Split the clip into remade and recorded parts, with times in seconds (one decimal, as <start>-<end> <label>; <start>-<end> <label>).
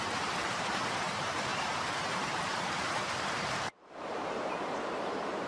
0.0-5.5 remade